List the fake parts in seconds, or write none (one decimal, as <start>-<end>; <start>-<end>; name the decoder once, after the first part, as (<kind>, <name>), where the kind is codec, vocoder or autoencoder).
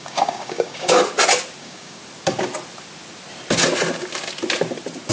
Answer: 0.0-1.0 (codec, DAC); 1.6-2.0